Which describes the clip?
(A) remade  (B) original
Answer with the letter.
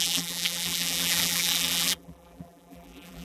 A